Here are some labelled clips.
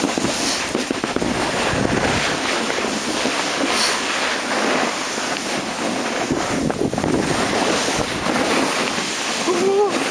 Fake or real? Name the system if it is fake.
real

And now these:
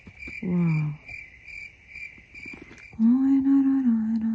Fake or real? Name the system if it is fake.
real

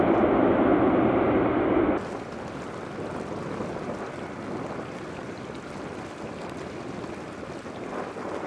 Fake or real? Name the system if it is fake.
real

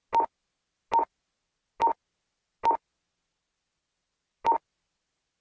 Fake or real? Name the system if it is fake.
real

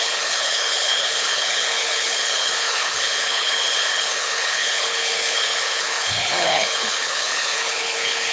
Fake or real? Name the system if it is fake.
fake, codec, HILCodec